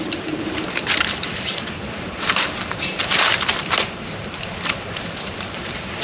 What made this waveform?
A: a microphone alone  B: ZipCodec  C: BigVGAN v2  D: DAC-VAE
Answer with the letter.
C